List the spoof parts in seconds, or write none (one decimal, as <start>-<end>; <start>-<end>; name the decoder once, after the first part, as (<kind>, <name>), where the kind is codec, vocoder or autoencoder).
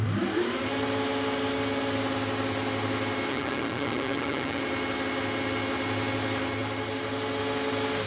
3.3-4.6 (vocoder, HiFi-GAN)